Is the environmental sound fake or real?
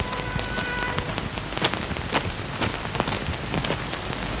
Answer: real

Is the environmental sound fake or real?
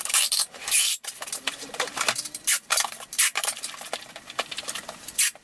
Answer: fake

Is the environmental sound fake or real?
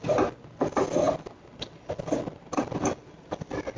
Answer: real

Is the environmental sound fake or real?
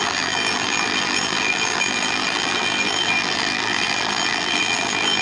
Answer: fake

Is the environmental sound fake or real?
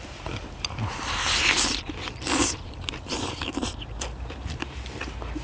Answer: fake